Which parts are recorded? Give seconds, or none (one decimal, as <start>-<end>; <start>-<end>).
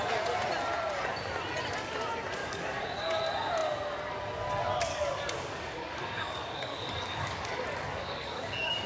0.0-2.4; 3.2-4.9